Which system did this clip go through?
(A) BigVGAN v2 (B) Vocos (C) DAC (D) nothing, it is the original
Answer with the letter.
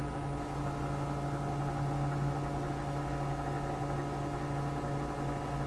D